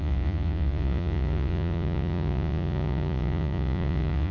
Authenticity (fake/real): fake